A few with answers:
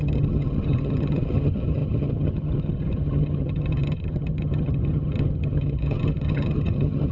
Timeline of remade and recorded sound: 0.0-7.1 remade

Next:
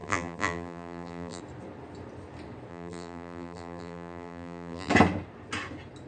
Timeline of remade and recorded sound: 0.0-1.4 remade; 1.4-2.7 recorded; 2.7-4.9 remade; 4.9-6.1 recorded

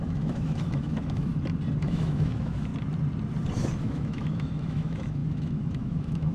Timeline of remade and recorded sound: 0.0-1.3 remade; 1.3-1.8 recorded; 1.8-2.7 remade; 2.7-3.8 recorded; 3.8-6.3 remade

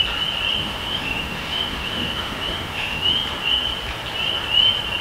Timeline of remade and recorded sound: 0.0-0.6 recorded; 0.6-3.1 remade; 3.1-5.0 recorded

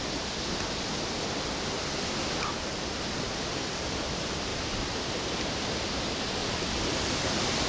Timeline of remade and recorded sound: 0.0-4.5 recorded; 4.5-6.0 remade; 6.0-6.4 recorded; 6.4-7.1 remade; 7.1-7.7 recorded

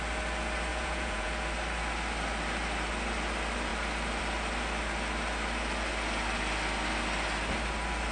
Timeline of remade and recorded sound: 0.0-0.7 recorded; 0.7-1.3 remade; 1.3-8.1 recorded